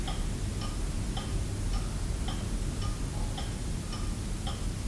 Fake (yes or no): no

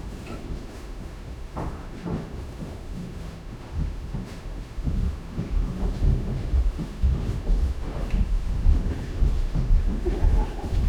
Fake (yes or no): yes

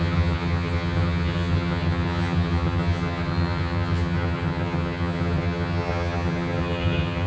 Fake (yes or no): yes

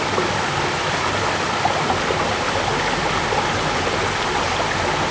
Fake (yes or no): no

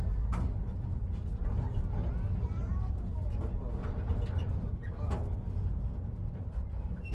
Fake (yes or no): no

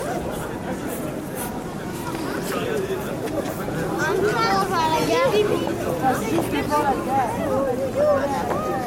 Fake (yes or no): no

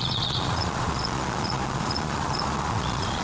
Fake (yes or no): yes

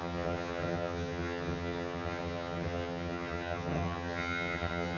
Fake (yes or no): yes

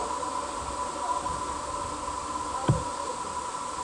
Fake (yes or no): no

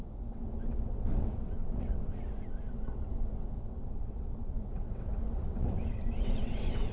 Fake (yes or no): yes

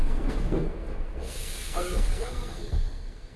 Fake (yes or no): yes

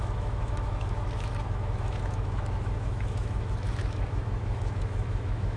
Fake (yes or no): yes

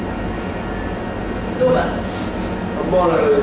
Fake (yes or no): no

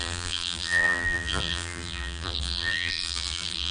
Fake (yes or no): yes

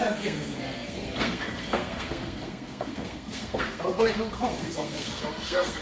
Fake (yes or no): yes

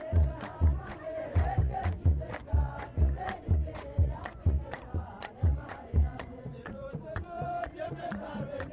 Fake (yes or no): yes